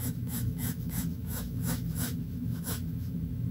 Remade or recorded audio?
remade